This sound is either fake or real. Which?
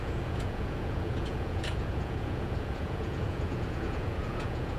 fake